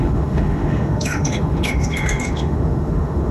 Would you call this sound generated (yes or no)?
yes